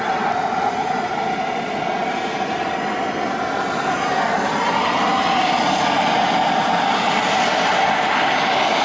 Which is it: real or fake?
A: real